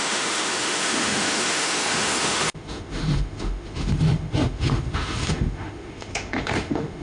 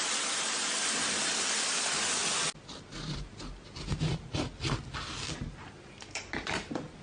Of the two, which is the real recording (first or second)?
second